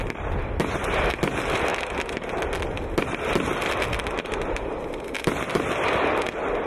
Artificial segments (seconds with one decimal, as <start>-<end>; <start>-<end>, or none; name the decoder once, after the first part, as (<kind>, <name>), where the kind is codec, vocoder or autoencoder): none